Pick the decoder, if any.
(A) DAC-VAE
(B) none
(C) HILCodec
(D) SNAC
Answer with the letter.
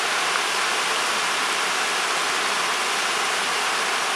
B